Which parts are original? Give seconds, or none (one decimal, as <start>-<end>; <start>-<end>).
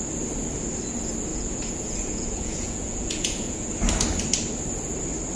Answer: 0.0-1.3; 3.7-5.4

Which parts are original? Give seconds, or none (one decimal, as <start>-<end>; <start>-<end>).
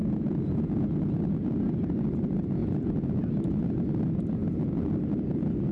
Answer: 1.7-2.6; 3.3-5.7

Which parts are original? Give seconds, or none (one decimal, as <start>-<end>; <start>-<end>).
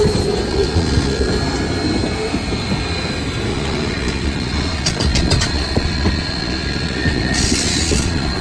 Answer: 0.0-0.5; 1.3-3.5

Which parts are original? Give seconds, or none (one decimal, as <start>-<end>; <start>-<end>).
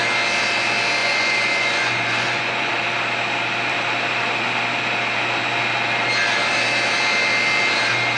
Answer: 0.0-1.0; 2.7-8.2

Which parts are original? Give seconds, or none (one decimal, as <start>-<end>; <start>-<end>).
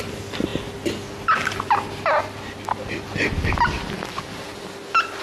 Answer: 0.0-5.2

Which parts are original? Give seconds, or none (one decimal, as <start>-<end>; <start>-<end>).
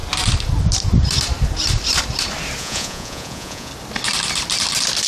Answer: 0.0-2.6; 3.7-5.1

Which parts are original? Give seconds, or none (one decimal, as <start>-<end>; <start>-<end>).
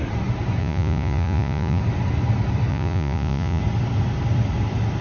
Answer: 0.0-0.6; 1.8-2.7; 3.6-5.0